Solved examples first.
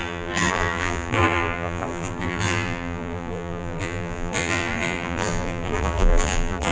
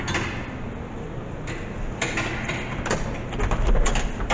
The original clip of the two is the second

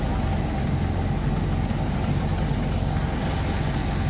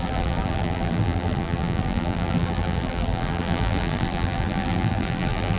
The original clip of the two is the first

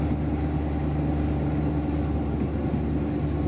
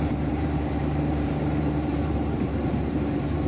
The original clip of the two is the first